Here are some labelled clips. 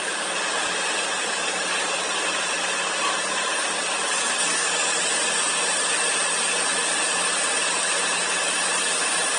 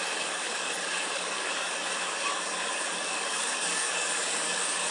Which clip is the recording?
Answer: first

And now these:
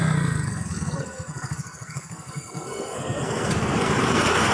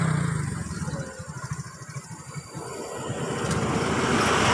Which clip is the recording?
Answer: second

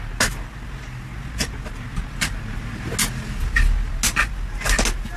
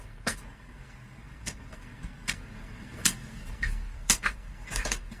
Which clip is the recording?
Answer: first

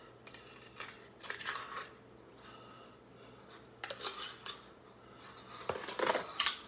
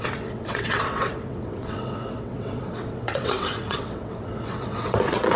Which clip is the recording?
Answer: first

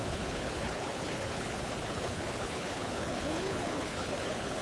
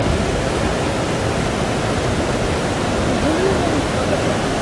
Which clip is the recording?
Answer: second